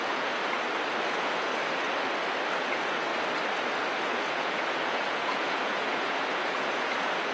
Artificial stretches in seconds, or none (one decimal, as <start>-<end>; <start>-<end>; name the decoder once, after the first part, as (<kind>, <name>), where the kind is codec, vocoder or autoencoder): 0.0-0.4 (vocoder, Vocos); 1.1-1.5; 2.6-3.1; 4.1-7.3